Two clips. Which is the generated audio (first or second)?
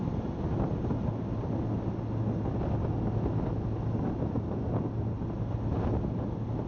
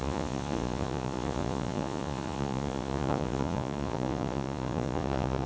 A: second